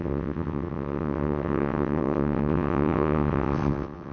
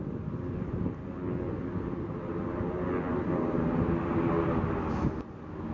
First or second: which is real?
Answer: second